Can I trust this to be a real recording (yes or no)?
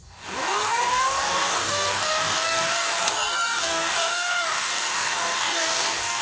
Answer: no